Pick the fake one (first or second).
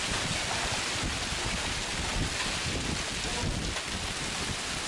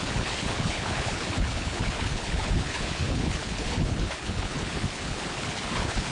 second